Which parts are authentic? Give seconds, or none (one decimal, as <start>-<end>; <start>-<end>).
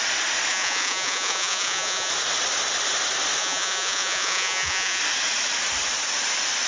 0.0-0.5; 2.1-3.4; 5.0-6.7